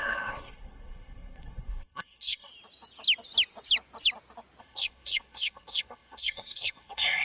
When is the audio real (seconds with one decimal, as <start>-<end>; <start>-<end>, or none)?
2.5-4.6